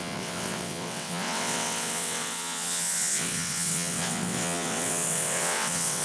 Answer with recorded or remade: remade